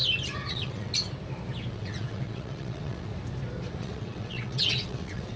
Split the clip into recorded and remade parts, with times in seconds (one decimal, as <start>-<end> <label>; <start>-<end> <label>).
0.0-0.5 recorded; 0.5-0.9 remade; 0.9-1.7 recorded; 1.7-3.1 remade; 3.1-3.8 recorded; 3.8-5.4 remade